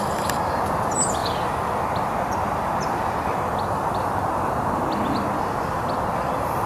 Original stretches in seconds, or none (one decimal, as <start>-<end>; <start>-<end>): 0.0-6.7